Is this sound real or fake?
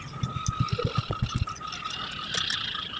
real